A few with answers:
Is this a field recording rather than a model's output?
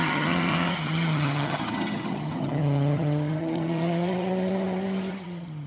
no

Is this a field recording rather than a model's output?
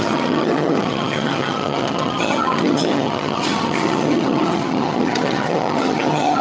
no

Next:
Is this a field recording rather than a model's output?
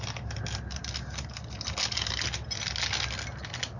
yes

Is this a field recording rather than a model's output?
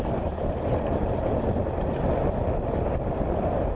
yes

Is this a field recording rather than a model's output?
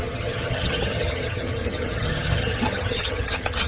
no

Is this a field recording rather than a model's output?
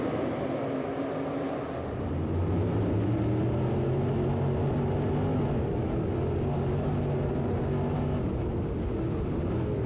yes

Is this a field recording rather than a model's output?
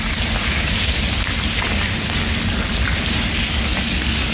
yes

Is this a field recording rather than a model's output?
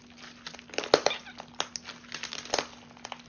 yes